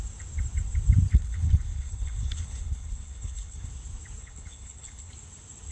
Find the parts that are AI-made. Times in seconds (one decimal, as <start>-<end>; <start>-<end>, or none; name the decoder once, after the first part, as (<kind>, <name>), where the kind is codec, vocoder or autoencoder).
1.1-3.7 (codec, HILCodec); 4.2-5.1